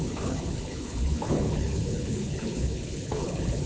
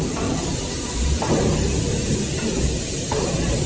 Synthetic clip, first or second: first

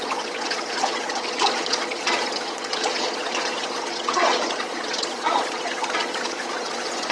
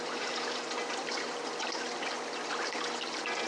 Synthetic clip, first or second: first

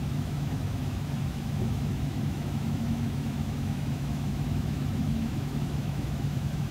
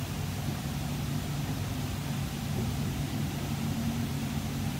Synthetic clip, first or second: first